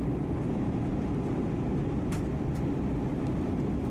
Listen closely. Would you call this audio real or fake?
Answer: fake